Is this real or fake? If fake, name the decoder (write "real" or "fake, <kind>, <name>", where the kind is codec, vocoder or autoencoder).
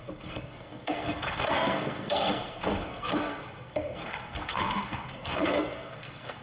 fake, codec, SNAC